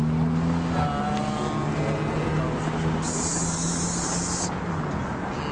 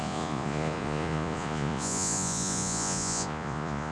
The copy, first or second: second